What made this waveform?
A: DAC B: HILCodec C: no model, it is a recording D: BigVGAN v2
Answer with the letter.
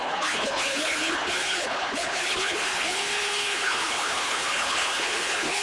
B